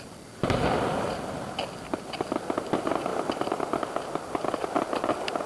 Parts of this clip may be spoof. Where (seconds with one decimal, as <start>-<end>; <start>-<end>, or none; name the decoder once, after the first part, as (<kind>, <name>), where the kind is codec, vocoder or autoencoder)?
3.1-5.5 (vocoder, BigVGAN v2)